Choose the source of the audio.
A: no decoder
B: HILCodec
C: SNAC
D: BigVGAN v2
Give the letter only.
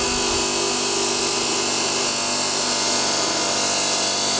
A